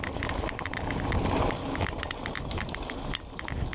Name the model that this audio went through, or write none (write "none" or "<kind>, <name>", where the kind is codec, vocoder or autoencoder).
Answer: none